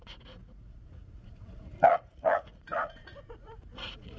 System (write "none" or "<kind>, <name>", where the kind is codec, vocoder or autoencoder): vocoder, Vocos